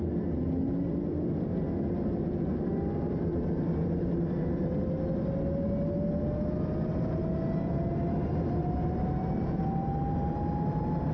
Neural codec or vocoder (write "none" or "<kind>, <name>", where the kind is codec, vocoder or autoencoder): none